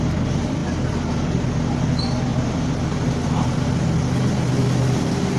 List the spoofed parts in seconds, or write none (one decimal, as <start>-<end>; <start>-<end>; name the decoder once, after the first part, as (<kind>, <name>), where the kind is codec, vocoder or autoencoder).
none